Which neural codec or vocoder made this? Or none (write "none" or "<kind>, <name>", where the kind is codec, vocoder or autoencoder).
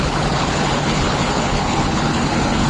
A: codec, HILCodec